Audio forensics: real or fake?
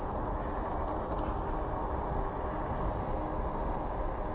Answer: real